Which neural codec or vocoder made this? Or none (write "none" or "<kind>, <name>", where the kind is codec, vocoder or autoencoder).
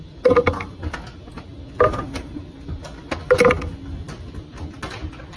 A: none